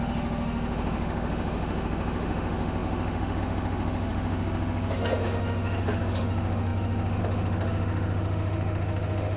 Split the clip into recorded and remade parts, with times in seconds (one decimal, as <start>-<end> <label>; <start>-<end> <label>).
0.0-9.4 remade